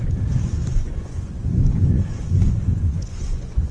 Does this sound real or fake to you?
fake